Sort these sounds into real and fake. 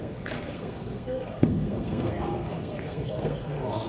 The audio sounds fake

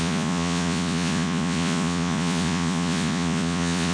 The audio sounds fake